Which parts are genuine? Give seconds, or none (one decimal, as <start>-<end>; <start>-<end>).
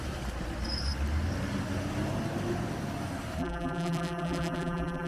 0.0-3.4